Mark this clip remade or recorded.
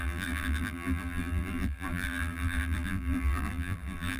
remade